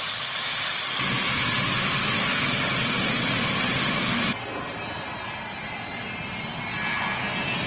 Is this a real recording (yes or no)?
yes